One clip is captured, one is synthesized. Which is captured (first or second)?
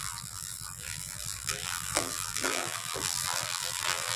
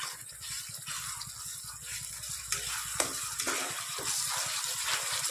second